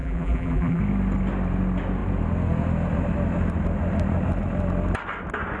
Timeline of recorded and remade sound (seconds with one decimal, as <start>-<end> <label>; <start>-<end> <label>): 0.0-0.8 remade; 0.8-5.6 recorded